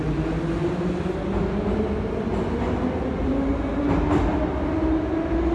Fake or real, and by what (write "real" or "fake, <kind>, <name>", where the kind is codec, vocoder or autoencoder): real